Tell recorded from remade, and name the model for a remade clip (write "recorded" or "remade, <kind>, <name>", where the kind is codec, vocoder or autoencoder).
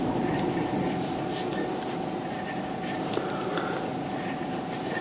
recorded